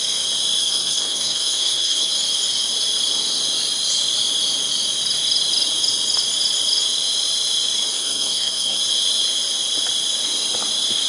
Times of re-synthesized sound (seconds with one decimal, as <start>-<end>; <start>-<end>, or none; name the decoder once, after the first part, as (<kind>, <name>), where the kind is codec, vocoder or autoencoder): 0.6-2.1 (codec, SNAC); 7.9-8.8